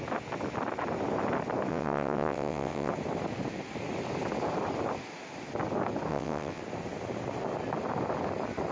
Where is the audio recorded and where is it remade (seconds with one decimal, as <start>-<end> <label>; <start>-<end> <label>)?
0.0-1.7 recorded; 1.7-2.9 remade; 2.9-6.1 recorded; 6.1-6.6 remade; 6.6-8.7 recorded